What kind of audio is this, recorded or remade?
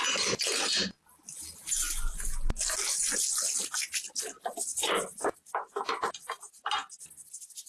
recorded